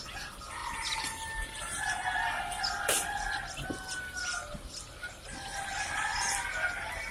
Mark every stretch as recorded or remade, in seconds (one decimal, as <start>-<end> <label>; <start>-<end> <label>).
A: 0.0-0.6 recorded; 0.6-1.8 remade; 1.8-7.1 recorded